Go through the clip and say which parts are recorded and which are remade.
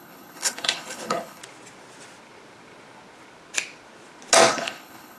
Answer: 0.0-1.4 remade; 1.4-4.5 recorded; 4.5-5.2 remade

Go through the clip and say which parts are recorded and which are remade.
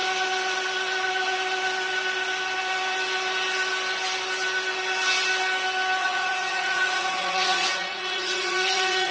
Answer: 0.0-6.0 recorded; 6.0-9.1 remade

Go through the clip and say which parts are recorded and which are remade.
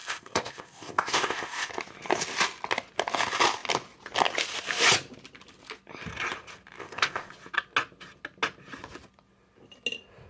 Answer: 0.0-1.7 remade; 1.7-6.8 recorded; 6.8-7.3 remade; 7.3-10.3 recorded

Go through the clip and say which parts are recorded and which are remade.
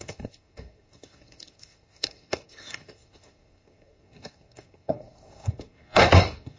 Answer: 0.0-6.6 remade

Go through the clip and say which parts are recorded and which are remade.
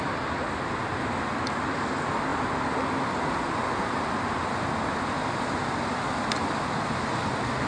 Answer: 0.0-7.7 recorded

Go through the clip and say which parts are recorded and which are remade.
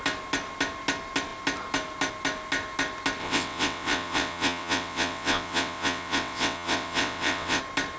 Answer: 0.0-3.2 recorded; 3.2-7.6 remade; 7.6-8.0 recorded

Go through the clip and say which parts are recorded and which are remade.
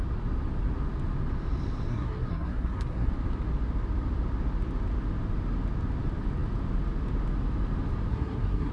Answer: 0.0-1.9 recorded; 1.9-3.1 remade; 3.1-8.1 recorded; 8.1-8.7 remade